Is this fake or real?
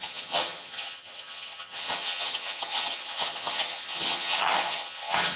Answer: fake